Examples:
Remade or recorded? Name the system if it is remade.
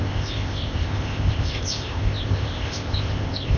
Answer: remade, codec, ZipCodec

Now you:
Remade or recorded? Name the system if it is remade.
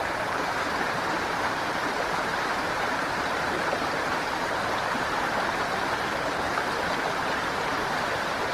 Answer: remade, vocoder, BigVGAN v2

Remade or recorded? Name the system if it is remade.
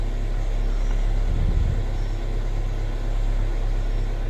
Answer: recorded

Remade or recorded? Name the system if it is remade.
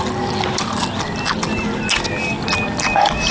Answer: recorded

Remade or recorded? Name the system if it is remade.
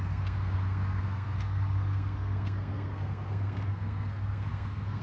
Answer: remade, codec, SNAC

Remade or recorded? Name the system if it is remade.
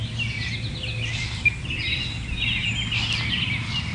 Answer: recorded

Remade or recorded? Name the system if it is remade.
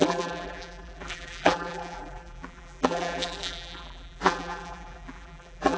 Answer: remade, vocoder, BigVGAN v2